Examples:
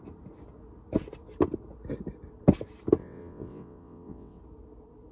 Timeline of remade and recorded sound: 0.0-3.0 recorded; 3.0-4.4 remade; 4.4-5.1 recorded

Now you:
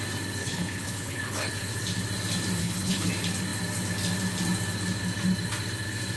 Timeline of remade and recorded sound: 0.0-0.4 recorded; 0.4-1.5 remade; 1.5-2.6 recorded; 2.6-3.1 remade; 3.1-6.2 recorded

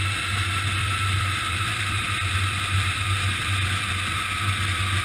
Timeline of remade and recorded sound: 0.0-0.8 recorded; 0.8-3.8 remade; 3.8-5.0 recorded

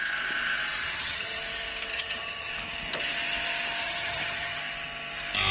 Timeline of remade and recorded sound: 0.0-0.8 recorded; 0.8-1.4 remade; 1.4-1.9 recorded; 1.9-2.5 remade; 2.5-3.8 recorded; 3.8-4.6 remade; 4.6-5.5 recorded

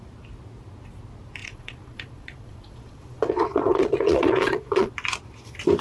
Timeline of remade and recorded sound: 0.0-1.4 recorded; 1.4-4.9 remade; 4.9-5.8 recorded

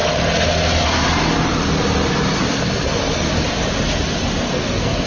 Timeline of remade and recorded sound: 0.0-2.5 recorded; 2.5-3.3 remade; 3.3-4.4 recorded; 4.4-5.1 remade

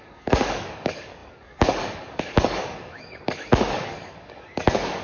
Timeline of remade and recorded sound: 0.0-5.0 remade